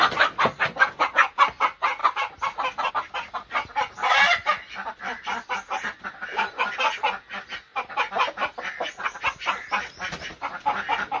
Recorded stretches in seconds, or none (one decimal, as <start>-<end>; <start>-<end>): 0.0-11.2